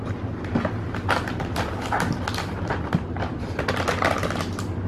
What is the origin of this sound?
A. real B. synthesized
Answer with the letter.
A